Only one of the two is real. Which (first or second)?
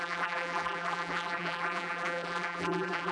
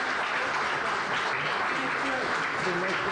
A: second